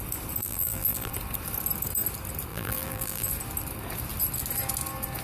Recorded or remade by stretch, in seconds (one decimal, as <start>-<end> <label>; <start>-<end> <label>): 0.0-0.4 recorded; 0.4-1.1 remade; 1.1-2.5 recorded; 2.5-3.3 remade; 3.3-5.2 recorded